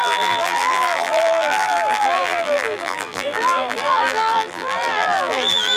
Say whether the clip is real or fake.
fake